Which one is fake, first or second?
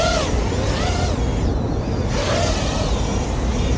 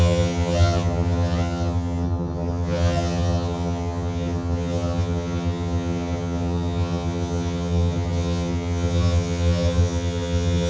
second